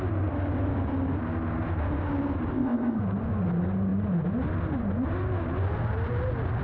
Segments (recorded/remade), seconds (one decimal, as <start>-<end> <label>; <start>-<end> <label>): 0.0-2.5 recorded; 2.5-3.0 remade; 3.0-6.6 recorded